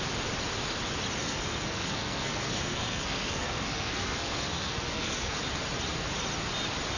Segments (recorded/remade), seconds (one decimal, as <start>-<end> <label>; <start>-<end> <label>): 0.0-1.2 recorded; 1.2-5.4 remade; 5.4-7.0 recorded